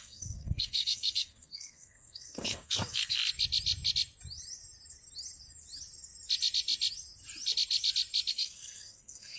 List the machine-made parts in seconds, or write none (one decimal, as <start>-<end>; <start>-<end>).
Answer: 0.0-3.2; 8.3-9.4